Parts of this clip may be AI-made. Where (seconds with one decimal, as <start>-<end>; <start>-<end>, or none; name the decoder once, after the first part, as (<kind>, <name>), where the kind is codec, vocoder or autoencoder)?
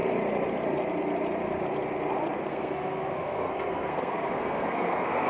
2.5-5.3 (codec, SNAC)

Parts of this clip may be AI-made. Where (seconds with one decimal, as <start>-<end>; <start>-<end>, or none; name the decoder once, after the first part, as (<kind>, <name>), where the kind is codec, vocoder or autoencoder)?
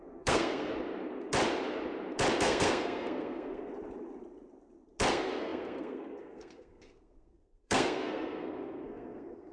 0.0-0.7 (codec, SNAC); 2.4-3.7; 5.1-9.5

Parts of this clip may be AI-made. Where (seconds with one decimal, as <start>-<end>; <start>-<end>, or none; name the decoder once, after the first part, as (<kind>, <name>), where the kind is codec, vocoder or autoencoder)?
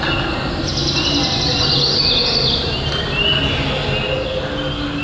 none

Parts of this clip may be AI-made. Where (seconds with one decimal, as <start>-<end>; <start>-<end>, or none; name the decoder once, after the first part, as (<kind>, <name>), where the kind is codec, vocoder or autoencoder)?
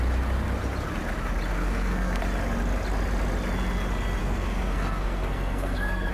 1.5-2.2 (codec, SNAC); 4.2-6.1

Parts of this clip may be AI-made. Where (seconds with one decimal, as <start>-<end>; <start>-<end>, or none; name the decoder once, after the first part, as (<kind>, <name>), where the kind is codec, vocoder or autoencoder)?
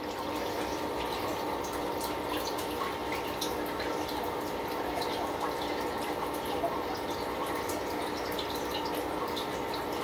none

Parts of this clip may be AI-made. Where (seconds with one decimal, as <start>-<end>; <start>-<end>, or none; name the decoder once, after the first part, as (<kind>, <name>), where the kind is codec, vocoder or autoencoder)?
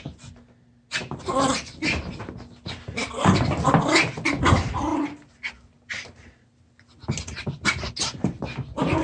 none